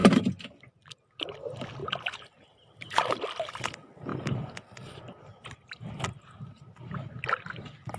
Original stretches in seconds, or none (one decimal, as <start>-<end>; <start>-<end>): 0.0-1.8; 3.6-4.1; 6.8-8.0